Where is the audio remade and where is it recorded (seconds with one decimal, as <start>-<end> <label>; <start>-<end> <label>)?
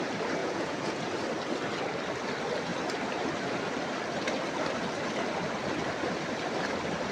0.0-0.4 recorded; 0.4-1.1 remade; 1.1-7.1 recorded